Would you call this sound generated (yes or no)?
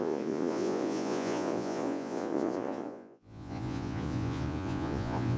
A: yes